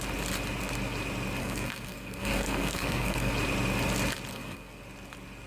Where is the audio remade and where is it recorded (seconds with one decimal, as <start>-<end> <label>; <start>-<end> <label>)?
0.0-1.4 recorded; 1.4-3.3 remade; 3.3-4.3 recorded; 4.3-4.8 remade; 4.8-5.5 recorded